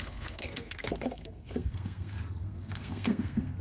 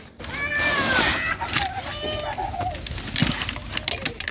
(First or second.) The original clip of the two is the second